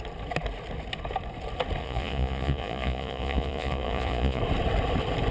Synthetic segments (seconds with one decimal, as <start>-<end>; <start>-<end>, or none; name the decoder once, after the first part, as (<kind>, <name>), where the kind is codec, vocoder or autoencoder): 1.8-4.4 (vocoder, Vocos)